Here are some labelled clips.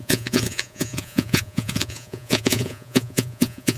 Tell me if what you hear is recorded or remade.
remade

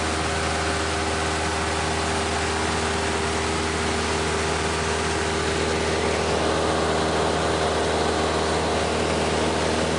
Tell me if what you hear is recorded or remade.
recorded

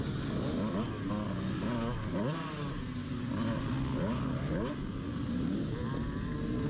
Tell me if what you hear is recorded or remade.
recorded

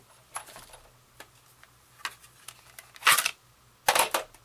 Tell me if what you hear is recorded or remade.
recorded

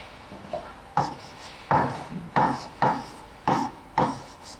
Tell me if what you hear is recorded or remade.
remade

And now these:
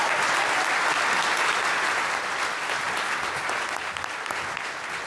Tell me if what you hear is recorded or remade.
recorded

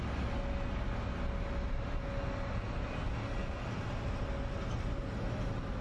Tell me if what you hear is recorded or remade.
recorded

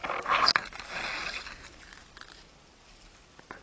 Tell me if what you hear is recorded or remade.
recorded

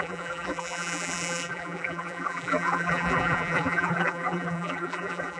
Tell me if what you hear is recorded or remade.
remade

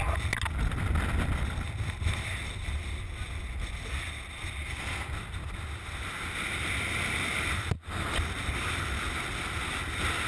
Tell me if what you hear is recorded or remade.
recorded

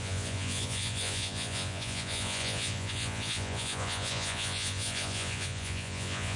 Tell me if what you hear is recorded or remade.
remade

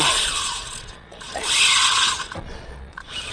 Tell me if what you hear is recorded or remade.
remade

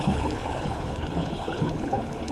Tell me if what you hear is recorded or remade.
remade